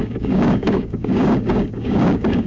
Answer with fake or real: fake